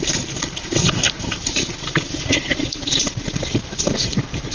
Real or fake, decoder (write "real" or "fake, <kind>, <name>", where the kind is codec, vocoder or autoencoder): fake, vocoder, BigVGAN v2